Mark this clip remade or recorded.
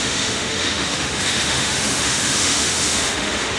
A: remade